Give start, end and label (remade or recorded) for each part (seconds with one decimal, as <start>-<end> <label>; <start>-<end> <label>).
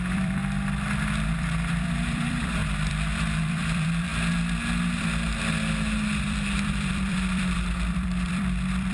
0.0-0.4 remade; 0.4-1.3 recorded; 1.3-4.1 remade; 4.1-6.2 recorded; 6.2-8.9 remade